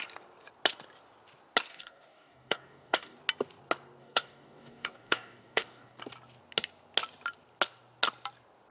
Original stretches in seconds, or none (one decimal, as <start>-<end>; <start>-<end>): 0.0-1.7; 3.2-4.0; 6.0-8.7